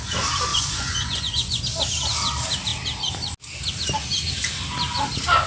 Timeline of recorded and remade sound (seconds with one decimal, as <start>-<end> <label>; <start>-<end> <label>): 0.0-0.5 recorded; 0.5-1.6 remade; 1.6-5.5 recorded